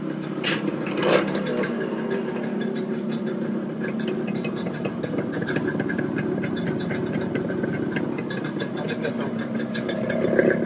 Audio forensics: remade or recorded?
recorded